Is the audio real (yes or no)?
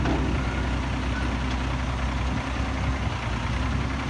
yes